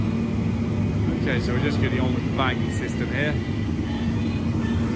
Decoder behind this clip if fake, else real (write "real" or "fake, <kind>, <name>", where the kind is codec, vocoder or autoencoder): real